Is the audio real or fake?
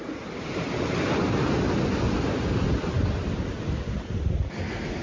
real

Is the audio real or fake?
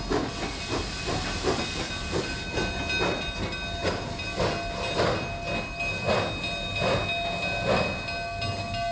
real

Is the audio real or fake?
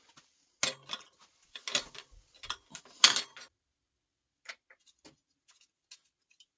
real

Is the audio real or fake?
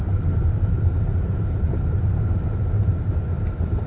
real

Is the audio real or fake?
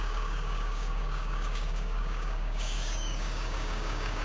fake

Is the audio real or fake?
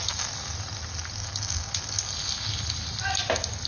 real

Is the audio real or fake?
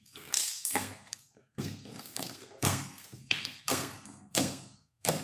fake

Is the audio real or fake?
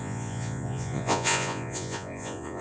fake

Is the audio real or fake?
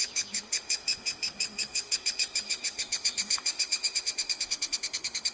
fake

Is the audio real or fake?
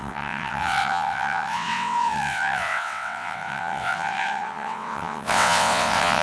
fake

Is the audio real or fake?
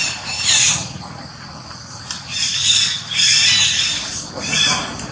real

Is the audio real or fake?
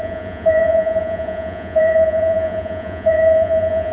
fake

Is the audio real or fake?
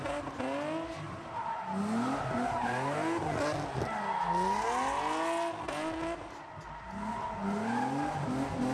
real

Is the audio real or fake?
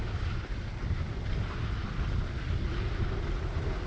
real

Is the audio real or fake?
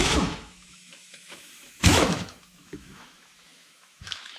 fake